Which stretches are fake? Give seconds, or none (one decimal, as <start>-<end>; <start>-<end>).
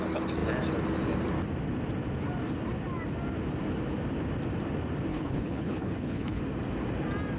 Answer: 5.1-6.4